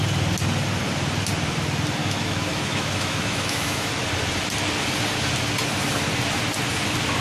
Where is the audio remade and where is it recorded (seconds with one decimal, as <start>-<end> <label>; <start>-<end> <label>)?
0.0-2.0 recorded; 2.0-3.9 remade; 3.9-7.2 recorded